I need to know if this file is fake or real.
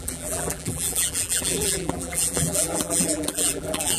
fake